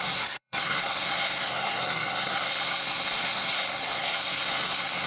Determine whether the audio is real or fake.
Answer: fake